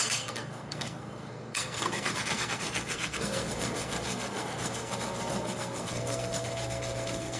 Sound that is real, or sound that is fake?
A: fake